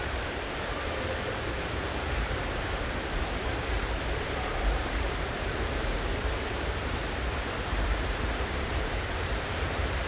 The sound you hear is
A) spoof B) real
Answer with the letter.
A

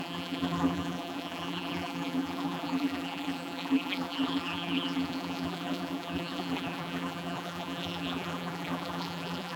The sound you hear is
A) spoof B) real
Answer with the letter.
A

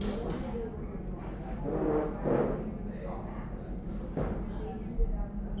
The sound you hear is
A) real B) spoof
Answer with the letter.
A